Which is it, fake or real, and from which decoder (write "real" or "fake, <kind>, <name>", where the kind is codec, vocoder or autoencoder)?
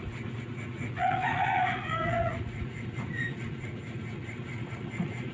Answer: fake, vocoder, Vocos